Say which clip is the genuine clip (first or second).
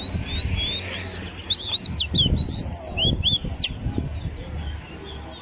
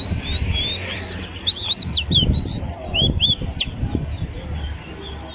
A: first